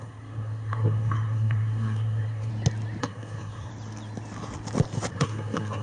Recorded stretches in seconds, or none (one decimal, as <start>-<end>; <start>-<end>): 2.5-3.0; 3.7-5.1